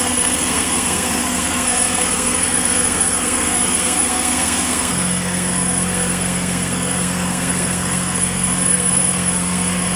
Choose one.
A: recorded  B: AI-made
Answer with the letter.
B